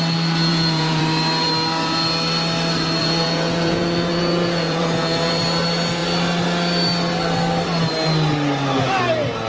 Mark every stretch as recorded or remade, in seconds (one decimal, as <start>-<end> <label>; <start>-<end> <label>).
0.0-0.5 recorded; 0.5-1.0 remade; 1.0-3.0 recorded; 3.0-5.4 remade; 5.4-9.5 recorded

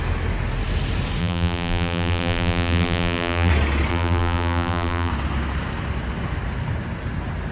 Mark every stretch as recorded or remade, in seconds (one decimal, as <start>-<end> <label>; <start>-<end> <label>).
0.0-1.2 recorded; 1.2-3.5 remade; 3.5-3.9 recorded; 3.9-5.1 remade; 5.1-7.5 recorded

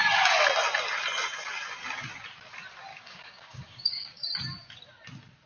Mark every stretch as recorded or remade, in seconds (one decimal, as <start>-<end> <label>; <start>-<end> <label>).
0.0-2.9 recorded; 2.9-4.2 remade; 4.2-5.5 recorded

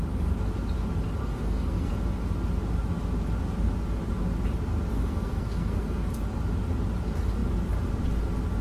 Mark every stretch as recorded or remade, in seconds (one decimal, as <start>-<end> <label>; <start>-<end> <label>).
0.0-1.2 recorded; 1.2-1.9 remade; 1.9-4.9 recorded; 4.9-6.1 remade; 6.1-8.6 recorded